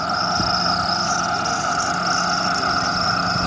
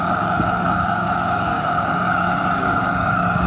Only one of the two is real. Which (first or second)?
first